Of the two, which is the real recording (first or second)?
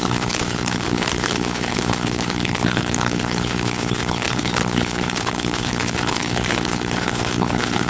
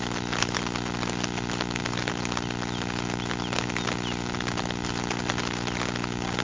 second